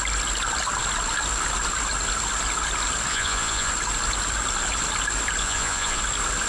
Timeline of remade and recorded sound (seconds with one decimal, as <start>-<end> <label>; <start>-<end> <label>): 0.0-3.1 recorded; 3.1-3.7 remade; 3.7-5.4 recorded; 5.4-6.0 remade; 6.0-6.5 recorded